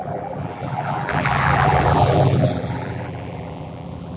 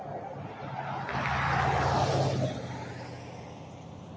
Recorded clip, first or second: second